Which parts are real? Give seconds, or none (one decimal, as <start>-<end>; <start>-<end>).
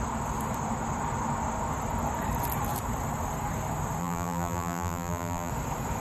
0.0-4.0; 5.5-6.0